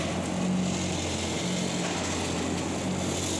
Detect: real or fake real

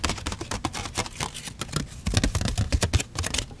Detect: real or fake real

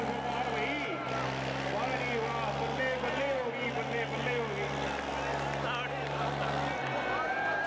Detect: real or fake real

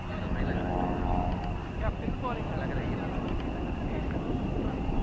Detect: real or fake real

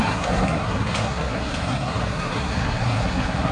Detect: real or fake fake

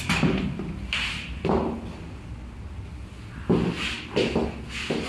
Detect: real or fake real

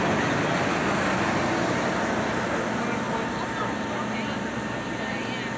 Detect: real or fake real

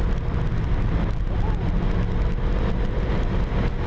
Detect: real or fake real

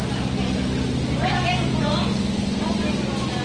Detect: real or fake real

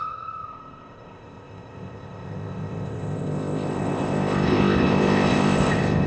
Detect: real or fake fake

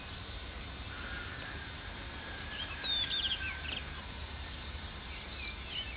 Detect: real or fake real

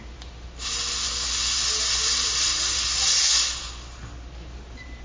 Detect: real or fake real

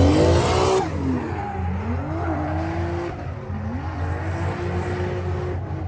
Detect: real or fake real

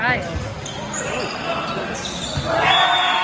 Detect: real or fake real